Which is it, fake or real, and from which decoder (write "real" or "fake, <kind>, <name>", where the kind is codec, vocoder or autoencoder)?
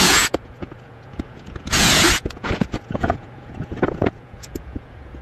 fake, vocoder, Vocos